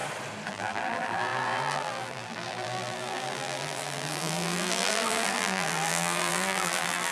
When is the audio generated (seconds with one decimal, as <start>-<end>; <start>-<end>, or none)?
0.5-7.1